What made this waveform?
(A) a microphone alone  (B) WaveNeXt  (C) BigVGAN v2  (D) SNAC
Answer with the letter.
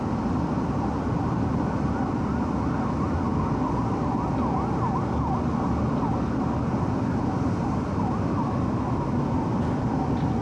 A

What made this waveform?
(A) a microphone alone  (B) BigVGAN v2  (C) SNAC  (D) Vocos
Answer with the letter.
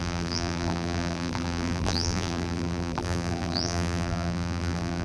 B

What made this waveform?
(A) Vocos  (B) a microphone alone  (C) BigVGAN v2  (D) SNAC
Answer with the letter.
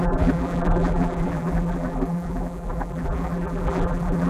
C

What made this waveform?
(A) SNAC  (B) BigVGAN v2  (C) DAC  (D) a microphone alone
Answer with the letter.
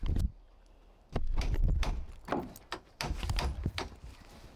B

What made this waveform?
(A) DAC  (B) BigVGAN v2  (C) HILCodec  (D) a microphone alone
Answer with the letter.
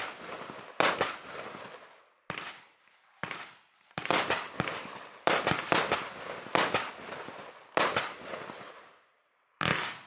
D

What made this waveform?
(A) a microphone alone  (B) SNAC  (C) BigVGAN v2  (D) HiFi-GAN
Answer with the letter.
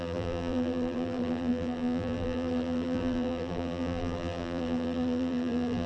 C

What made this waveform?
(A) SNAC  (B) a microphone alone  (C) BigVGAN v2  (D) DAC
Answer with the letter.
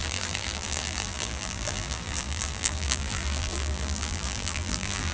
C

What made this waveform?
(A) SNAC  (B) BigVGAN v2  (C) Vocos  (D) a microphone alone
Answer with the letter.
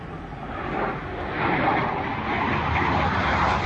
D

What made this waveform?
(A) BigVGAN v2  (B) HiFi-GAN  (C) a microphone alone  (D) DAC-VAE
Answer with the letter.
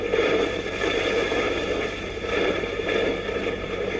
A